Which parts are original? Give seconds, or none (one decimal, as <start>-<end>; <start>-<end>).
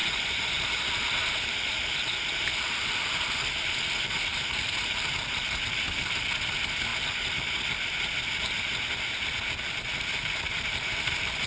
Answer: 0.6-11.5